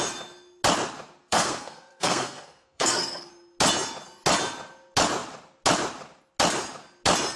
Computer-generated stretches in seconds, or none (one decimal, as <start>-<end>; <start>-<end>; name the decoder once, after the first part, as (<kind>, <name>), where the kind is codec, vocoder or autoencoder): 1.2-3.3 (codec, SNAC)